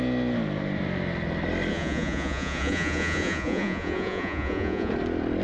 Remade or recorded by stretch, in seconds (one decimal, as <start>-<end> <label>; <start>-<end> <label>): 0.0-1.7 recorded; 1.7-4.9 remade; 4.9-5.4 recorded